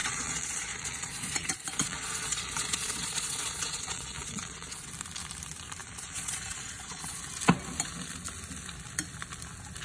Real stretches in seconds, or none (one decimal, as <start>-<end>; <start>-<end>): 4.9-5.8; 7.2-9.8